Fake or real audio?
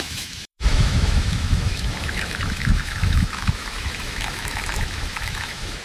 fake